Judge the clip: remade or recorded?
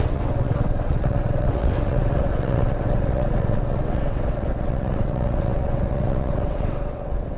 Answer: remade